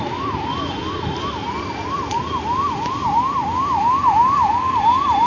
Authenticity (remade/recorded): recorded